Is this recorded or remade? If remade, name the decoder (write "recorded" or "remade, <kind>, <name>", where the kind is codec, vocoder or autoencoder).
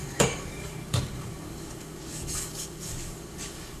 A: remade, codec, DAC